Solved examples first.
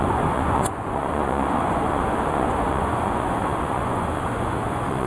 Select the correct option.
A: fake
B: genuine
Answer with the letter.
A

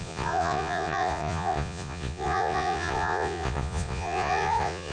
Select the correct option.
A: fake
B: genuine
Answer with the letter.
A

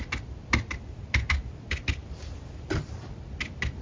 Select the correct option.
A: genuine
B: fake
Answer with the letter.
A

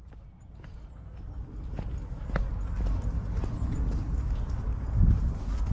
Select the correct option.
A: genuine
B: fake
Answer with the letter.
A